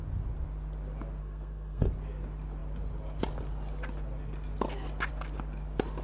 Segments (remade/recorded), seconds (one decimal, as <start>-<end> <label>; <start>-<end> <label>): 0.0-1.2 recorded; 1.2-1.9 remade; 1.9-6.0 recorded

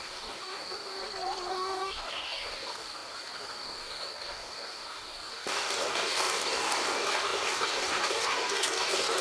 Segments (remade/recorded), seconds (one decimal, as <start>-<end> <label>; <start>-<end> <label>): 0.0-1.0 remade; 1.0-1.5 recorded; 1.5-9.2 remade

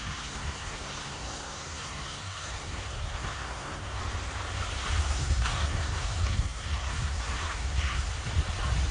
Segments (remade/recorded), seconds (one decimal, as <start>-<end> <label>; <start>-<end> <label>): 0.0-4.0 remade; 4.0-5.0 recorded; 5.0-8.1 remade; 8.1-8.9 recorded

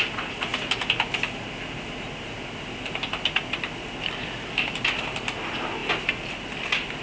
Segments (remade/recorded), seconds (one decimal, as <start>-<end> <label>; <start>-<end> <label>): 0.0-7.0 recorded